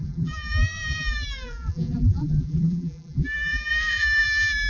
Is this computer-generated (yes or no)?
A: yes